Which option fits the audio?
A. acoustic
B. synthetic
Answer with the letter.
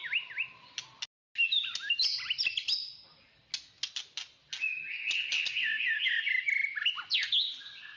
A